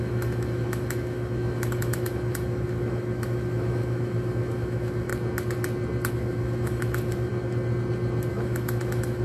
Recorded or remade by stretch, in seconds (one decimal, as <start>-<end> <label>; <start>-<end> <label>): 0.0-5.1 remade; 5.1-6.1 recorded; 6.1-7.3 remade; 7.3-8.3 recorded; 8.3-9.2 remade